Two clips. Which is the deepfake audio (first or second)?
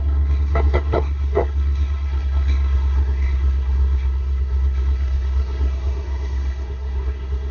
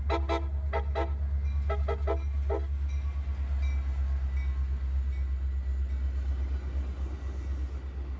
first